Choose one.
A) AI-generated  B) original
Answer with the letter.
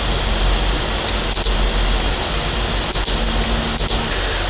B